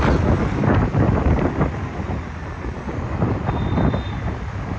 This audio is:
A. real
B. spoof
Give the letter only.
A